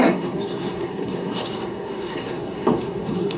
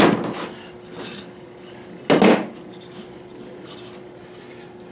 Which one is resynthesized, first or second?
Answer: first